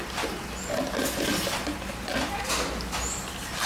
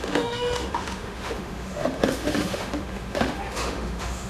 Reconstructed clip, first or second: second